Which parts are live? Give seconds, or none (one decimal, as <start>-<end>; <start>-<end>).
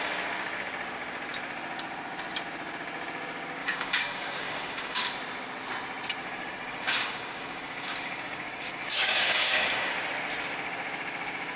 0.0-3.6; 5.1-6.2; 9.9-11.6